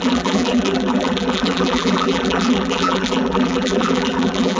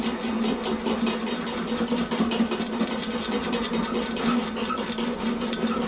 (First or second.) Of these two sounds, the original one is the second